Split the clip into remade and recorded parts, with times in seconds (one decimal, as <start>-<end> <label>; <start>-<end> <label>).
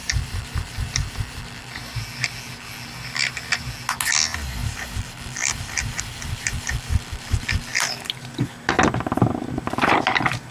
0.0-1.4 remade; 1.4-4.6 recorded; 4.6-7.0 remade; 7.0-10.5 recorded